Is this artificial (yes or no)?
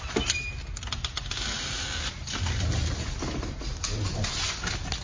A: no